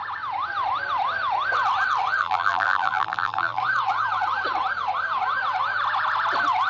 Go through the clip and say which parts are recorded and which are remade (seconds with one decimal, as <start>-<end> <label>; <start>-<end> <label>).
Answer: 0.0-2.2 recorded; 2.2-3.6 remade; 3.6-6.7 recorded